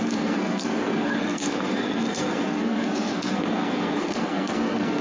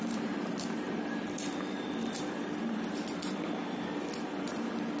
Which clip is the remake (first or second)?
first